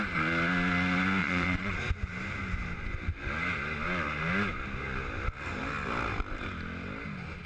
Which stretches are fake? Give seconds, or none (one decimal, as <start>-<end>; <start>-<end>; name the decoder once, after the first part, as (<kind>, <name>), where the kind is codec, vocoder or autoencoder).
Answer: 1.2-1.8 (vocoder, Vocos)